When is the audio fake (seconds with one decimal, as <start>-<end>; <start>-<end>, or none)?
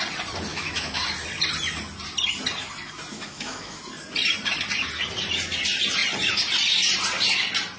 0.5-1.0; 3.1-3.8